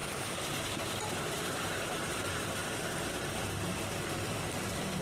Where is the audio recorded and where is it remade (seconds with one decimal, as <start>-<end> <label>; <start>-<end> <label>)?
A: 0.0-3.0 remade; 3.0-5.0 recorded